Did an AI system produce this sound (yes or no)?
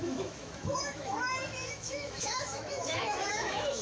yes